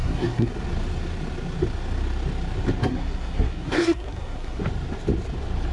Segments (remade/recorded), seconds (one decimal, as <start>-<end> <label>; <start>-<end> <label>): 0.0-0.5 remade; 0.5-2.8 recorded; 2.8-4.6 remade; 4.6-5.7 recorded